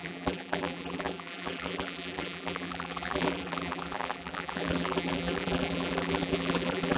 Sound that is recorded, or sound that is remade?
remade